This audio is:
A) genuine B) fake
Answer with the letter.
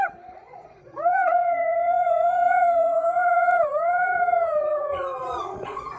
B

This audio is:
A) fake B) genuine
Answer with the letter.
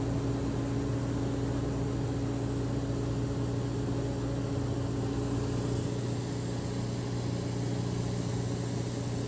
B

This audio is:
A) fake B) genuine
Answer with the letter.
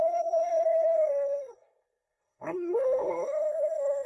A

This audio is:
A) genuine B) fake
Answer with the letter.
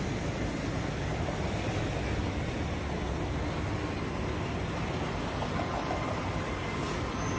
A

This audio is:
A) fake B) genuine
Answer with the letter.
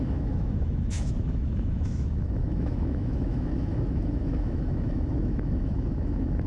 A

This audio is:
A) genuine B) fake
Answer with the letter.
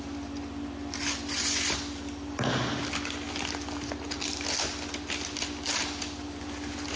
A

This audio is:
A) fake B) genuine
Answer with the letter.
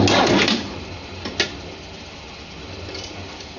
B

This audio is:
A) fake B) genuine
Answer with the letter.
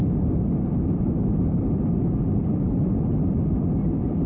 B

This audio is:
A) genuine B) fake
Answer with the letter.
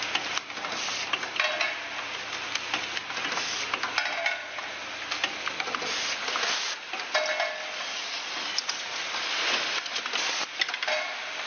A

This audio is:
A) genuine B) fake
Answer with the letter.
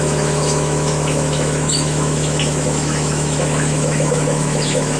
B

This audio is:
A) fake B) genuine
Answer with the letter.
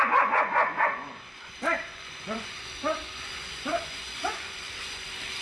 A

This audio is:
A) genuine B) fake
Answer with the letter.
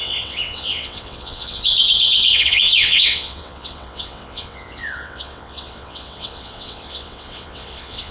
B